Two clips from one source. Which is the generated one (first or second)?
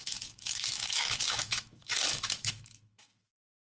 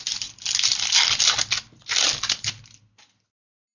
first